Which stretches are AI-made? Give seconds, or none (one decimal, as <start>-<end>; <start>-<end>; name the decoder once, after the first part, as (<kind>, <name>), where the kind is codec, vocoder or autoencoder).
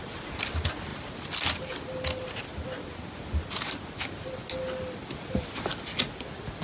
none